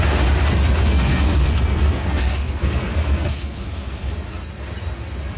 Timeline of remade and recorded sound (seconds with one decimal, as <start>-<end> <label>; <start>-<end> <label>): 0.0-0.9 recorded; 0.9-4.1 remade; 4.1-5.4 recorded

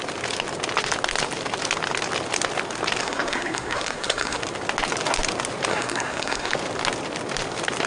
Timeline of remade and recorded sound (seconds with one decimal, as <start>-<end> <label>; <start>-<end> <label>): 0.0-3.0 recorded; 3.0-4.4 remade; 4.4-5.7 recorded; 5.7-6.5 remade; 6.5-7.9 recorded

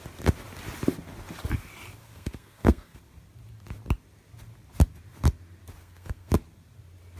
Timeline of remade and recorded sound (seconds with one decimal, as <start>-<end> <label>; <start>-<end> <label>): 0.0-2.0 recorded; 2.0-3.0 remade; 3.0-5.8 recorded; 5.8-6.3 remade; 6.3-7.2 recorded

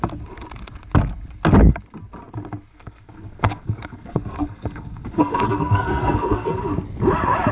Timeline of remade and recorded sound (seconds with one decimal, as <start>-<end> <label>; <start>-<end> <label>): 0.0-2.7 recorded; 2.7-6.6 remade; 6.6-7.5 recorded

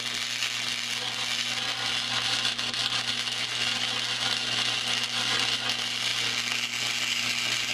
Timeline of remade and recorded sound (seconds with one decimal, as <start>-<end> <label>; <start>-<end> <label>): 0.0-7.7 recorded

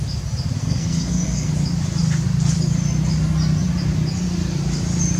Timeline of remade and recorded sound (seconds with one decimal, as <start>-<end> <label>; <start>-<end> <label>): 0.0-0.6 recorded; 0.6-1.5 remade; 1.5-5.2 recorded

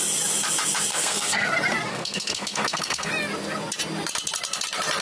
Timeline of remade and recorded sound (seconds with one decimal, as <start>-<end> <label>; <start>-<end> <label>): 0.0-0.9 recorded; 0.9-1.5 remade; 1.5-1.9 recorded; 1.9-3.1 remade; 3.1-5.0 recorded

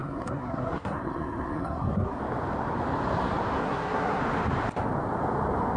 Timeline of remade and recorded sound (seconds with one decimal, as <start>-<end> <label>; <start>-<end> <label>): 0.0-2.2 remade; 2.2-3.6 recorded; 3.6-4.2 remade; 4.2-5.8 recorded